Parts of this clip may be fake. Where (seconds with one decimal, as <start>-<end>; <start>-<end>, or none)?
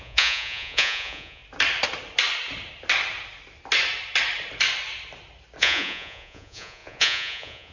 0.0-1.4; 5.6-7.7